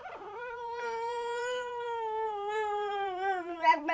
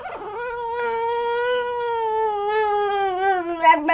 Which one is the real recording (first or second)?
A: second